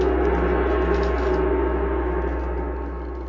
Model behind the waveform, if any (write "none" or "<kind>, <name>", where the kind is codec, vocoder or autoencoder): none